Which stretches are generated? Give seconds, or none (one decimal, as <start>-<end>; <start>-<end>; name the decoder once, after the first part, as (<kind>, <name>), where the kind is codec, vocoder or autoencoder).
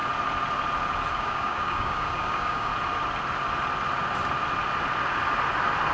1.1-2.7 (codec, DAC)